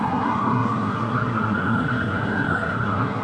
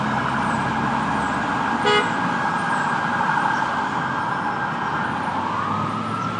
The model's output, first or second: first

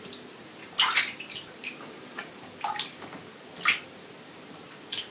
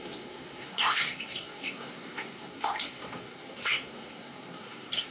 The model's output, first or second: second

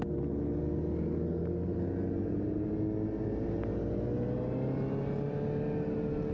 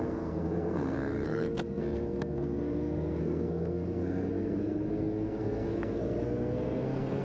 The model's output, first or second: second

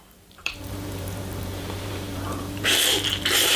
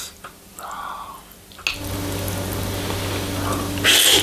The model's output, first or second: first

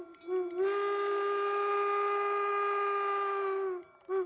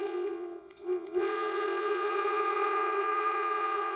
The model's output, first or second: second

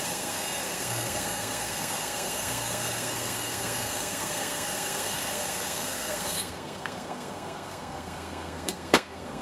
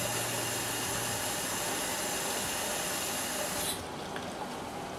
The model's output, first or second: first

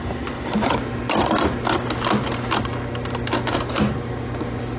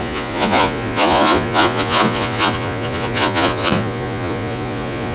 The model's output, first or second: second